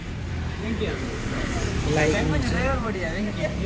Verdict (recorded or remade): remade